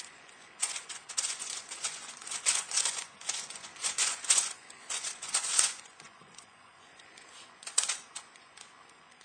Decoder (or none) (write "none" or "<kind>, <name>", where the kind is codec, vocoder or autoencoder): vocoder, Vocos